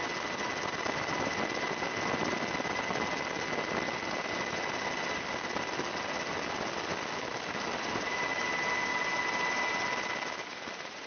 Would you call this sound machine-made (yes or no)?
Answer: no